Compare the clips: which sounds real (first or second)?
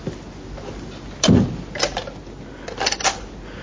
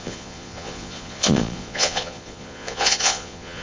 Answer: first